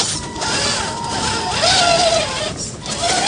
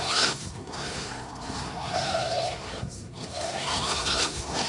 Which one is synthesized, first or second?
second